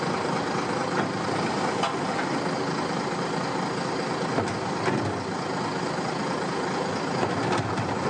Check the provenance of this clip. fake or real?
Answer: real